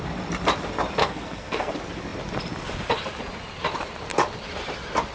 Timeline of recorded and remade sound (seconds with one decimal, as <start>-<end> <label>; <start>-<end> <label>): 0.0-1.0 recorded; 1.0-1.7 remade; 1.7-5.1 recorded